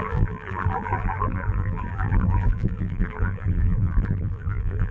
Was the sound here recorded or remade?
remade